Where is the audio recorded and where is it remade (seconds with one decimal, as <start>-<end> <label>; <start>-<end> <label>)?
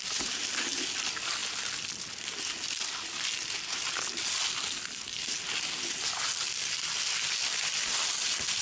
0.0-8.6 recorded